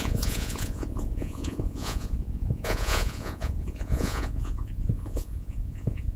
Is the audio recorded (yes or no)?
no